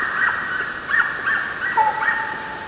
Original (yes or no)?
yes